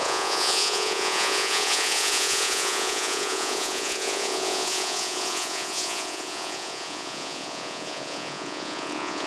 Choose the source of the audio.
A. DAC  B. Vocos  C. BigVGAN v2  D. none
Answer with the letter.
B